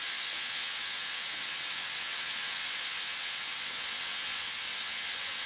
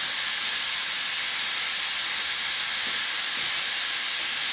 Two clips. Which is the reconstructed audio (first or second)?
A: first